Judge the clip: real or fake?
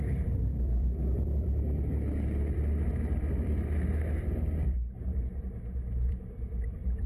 fake